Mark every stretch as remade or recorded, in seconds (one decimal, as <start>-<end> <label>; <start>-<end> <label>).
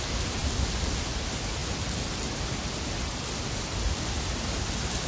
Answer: 0.0-5.1 recorded